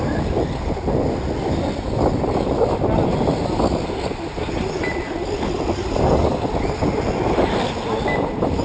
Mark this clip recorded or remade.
recorded